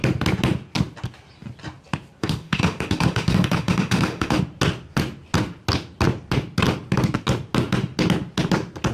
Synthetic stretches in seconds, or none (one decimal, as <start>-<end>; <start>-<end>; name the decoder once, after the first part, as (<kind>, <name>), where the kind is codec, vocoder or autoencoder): 2.2-4.4 (autoencoder, DAC-VAE)

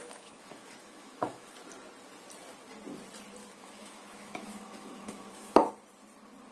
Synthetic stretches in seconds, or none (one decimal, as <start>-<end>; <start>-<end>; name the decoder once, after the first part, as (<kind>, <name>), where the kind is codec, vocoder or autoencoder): 0.0-1.5 (autoencoder, DAC-VAE); 3.4-5.7